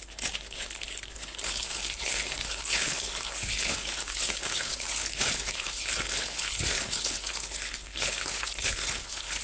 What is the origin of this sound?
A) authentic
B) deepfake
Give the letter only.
B